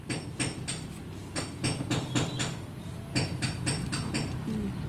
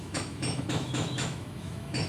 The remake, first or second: second